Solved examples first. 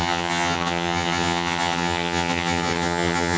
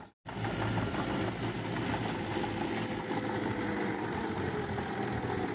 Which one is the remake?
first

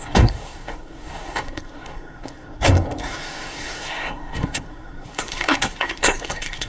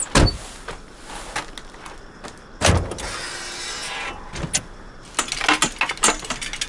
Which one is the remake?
first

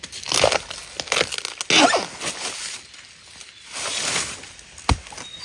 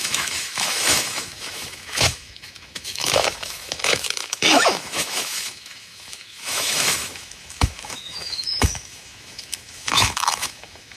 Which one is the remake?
second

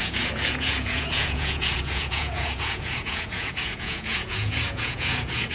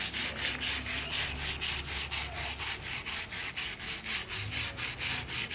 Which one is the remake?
first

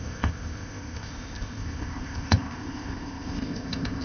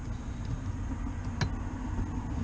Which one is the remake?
first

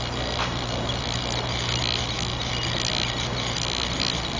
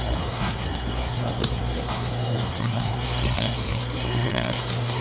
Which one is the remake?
second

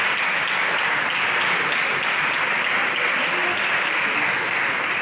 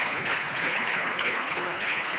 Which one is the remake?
second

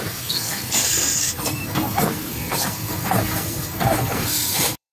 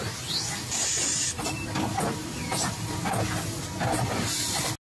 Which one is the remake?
first